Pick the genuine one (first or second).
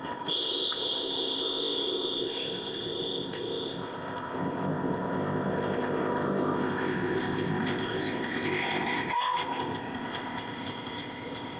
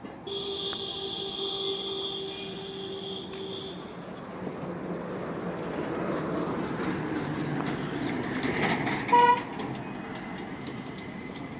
second